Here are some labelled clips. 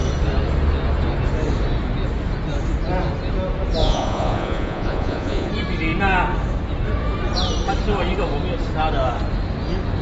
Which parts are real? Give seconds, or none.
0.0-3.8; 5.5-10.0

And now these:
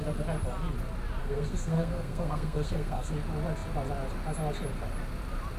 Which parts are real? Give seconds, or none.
0.0-1.2; 3.1-5.6

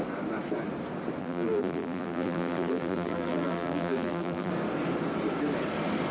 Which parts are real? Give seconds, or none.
0.0-1.2; 4.5-6.1

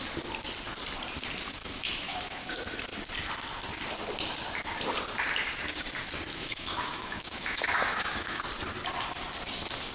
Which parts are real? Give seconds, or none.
0.0-1.6; 2.5-6.3; 8.4-9.9

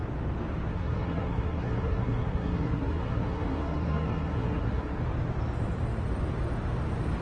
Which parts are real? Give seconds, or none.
0.0-0.7; 5.0-7.2

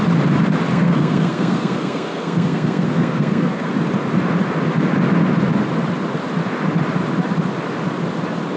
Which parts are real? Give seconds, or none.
0.0-0.7; 3.7-8.6

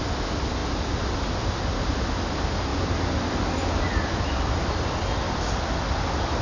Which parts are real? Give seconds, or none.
0.0-6.4